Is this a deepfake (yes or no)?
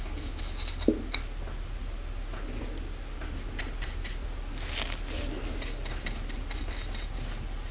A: no